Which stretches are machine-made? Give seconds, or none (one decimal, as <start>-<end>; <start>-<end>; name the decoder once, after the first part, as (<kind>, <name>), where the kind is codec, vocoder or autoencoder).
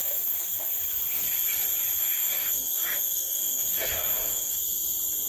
0.0-0.7 (codec, DAC); 2.0-4.5